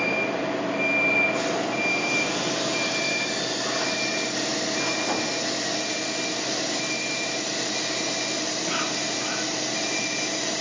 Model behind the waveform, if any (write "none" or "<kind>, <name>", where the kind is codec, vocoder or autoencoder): vocoder, BigVGAN v2